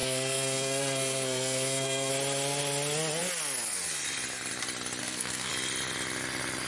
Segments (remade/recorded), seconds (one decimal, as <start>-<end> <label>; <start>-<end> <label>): 0.0-2.1 remade; 2.1-5.0 recorded; 5.0-5.5 remade; 5.5-6.7 recorded